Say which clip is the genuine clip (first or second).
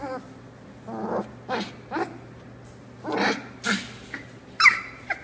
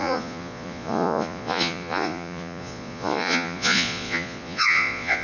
first